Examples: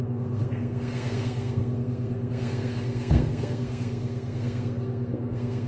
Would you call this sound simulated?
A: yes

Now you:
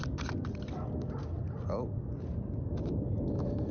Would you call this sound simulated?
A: yes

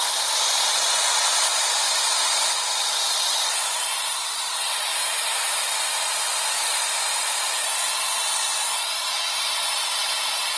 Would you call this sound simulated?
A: no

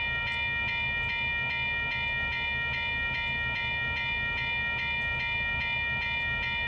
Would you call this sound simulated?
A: no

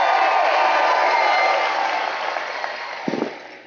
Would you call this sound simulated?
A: no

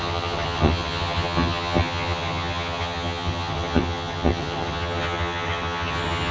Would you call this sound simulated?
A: yes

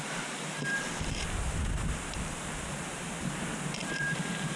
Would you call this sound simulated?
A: yes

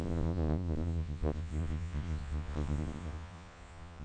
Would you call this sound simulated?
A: yes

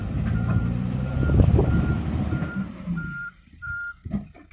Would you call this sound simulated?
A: yes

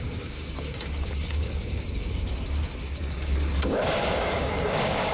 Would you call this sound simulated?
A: yes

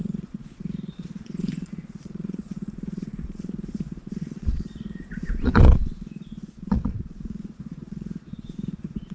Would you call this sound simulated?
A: yes